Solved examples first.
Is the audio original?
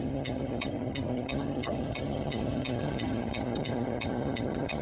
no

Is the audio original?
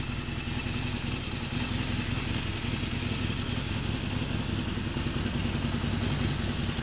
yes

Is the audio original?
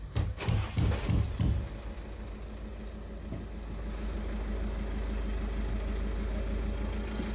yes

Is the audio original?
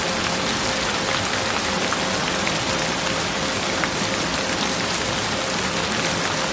yes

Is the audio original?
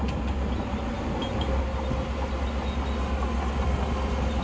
yes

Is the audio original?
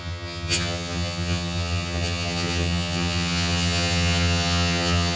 no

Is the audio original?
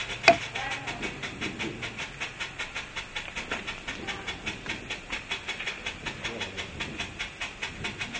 yes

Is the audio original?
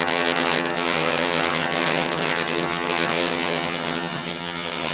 no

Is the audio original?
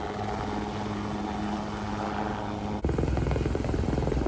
yes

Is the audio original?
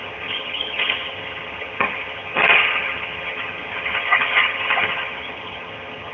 no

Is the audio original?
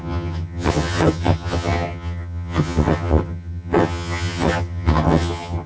no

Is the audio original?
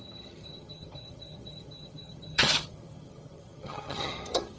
no